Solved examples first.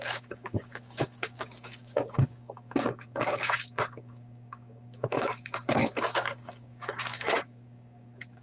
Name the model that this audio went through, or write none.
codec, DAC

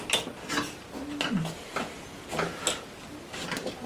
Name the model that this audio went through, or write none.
none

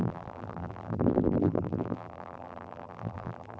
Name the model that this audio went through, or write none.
vocoder, BigVGAN v2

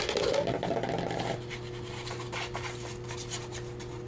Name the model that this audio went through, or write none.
none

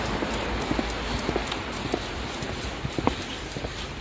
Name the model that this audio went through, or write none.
none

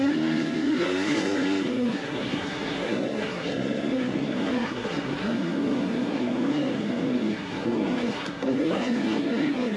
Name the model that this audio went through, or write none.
codec, SNAC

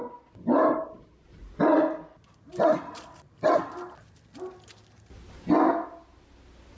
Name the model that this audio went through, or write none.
none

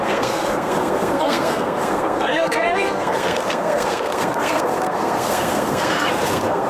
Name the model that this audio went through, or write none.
codec, SNAC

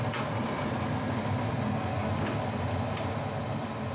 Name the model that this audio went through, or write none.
none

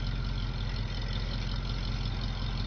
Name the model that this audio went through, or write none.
none